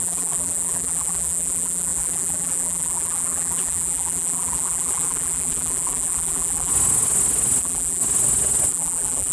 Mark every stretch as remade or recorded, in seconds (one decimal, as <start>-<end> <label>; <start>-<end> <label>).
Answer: 0.0-6.7 remade; 6.7-7.6 recorded; 7.6-8.0 remade; 8.0-8.7 recorded; 8.7-9.3 remade